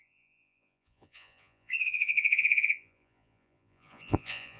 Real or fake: fake